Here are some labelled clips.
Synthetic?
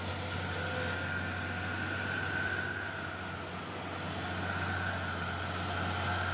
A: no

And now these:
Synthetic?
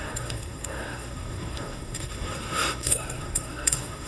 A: yes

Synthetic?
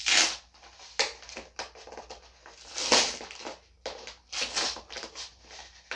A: no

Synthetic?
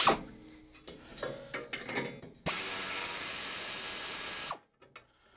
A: no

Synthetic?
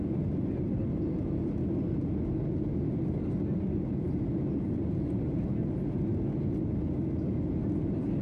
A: no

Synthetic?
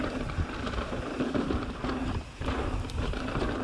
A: no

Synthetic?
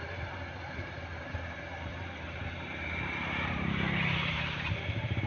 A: yes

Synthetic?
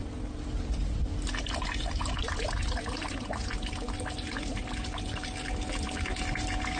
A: no